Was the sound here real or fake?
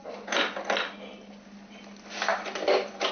real